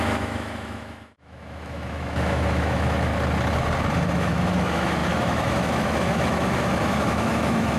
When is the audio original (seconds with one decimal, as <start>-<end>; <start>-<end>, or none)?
3.1-4.1